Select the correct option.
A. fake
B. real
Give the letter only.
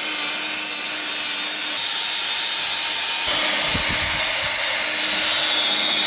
B